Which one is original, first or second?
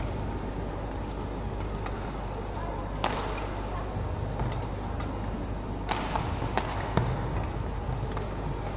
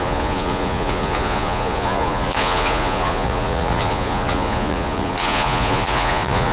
first